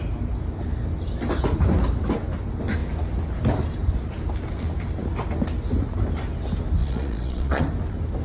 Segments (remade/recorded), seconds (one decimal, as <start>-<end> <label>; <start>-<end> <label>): 0.0-6.8 recorded; 6.8-7.6 remade; 7.6-8.2 recorded